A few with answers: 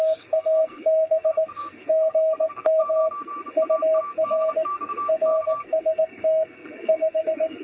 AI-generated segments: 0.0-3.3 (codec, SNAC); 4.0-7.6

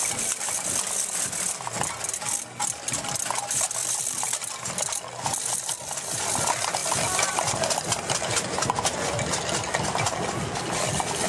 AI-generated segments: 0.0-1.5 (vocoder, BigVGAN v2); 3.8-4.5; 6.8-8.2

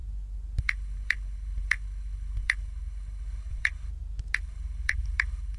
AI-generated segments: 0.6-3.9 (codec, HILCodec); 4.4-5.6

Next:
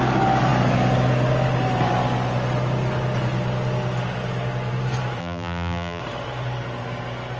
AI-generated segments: 5.2-6.0 (vocoder, BigVGAN v2)

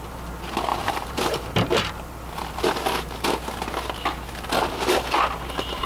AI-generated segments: 0.7-1.9 (vocoder, BigVGAN v2)

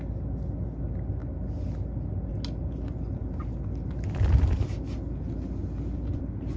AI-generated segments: none

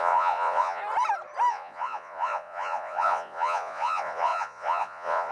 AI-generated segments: 0.0-0.8 (vocoder, Vocos); 1.5-5.3

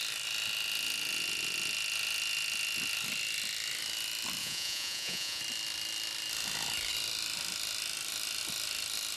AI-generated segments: 4.4-5.4 (vocoder, Vocos)